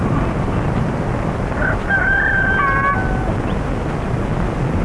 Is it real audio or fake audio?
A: real